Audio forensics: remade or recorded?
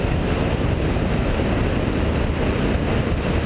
recorded